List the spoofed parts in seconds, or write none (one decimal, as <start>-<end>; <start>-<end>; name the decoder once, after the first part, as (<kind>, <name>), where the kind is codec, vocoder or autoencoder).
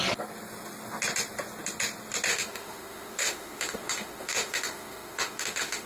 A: 2.3-5.9 (autoencoder, DAC-VAE)